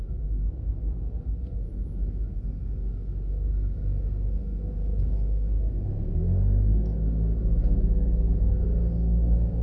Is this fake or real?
fake